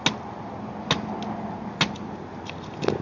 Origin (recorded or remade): recorded